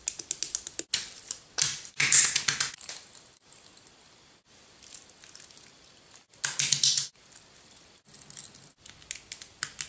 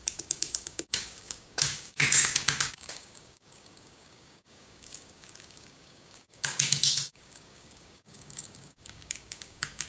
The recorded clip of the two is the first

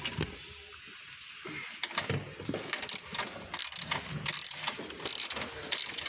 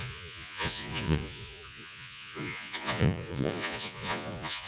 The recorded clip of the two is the first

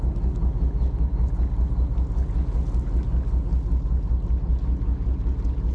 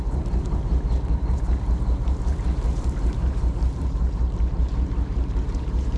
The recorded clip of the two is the first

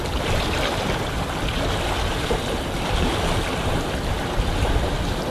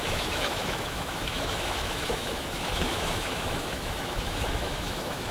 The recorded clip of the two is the first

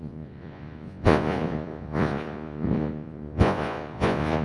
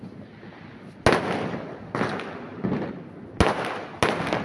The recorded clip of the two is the second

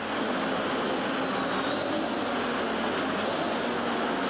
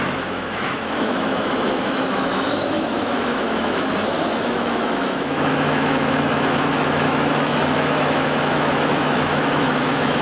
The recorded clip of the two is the first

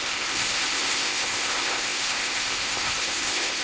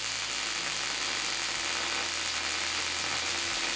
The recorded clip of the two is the second